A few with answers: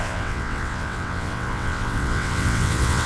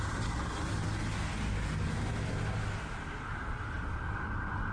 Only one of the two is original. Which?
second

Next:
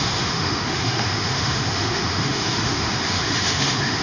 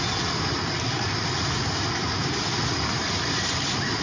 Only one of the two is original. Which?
second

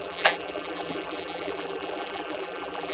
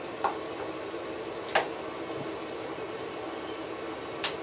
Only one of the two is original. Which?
second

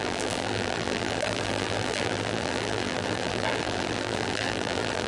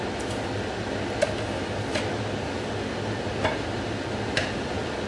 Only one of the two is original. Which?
second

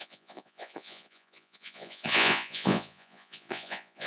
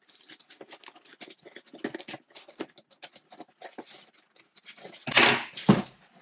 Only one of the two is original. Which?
second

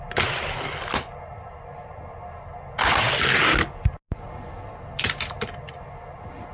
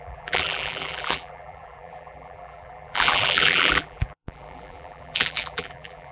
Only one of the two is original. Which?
first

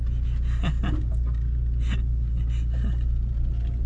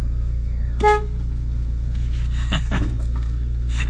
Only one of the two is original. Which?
first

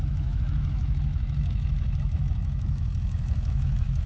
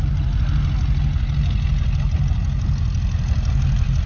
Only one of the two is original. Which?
second